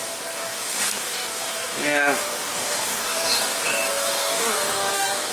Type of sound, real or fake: fake